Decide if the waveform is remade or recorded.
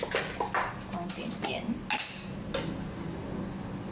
recorded